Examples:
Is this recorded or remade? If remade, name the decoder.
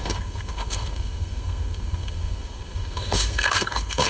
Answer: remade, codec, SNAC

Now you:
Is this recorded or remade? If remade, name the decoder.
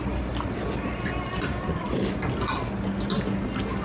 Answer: recorded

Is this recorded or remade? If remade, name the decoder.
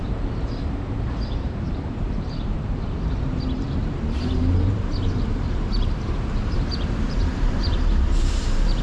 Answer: remade, vocoder, BigVGAN v2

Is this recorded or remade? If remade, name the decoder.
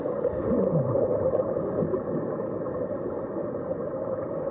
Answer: recorded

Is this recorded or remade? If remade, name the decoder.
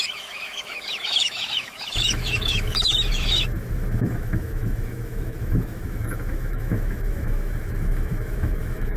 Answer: remade, autoencoder, DAC-VAE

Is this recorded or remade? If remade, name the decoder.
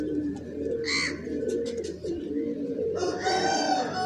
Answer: recorded